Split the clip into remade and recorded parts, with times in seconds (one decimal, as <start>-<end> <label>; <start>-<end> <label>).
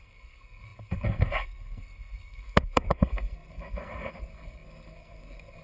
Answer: 0.0-5.6 remade